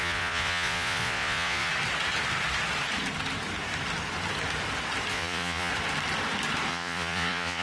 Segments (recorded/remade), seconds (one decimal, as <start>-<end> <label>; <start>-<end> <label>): 0.0-1.7 remade; 1.7-5.1 recorded; 5.1-5.7 remade; 5.7-6.7 recorded; 6.7-7.6 remade